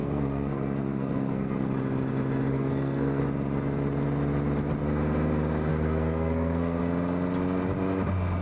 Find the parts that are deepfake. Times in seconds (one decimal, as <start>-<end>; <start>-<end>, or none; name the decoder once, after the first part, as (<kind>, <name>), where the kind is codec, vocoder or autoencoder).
0.0-1.7 (codec, SNAC); 2.5-3.2; 5.7-6.8